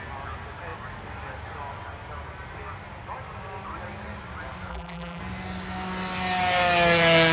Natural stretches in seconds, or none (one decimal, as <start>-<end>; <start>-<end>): 0.0-4.7; 5.2-7.3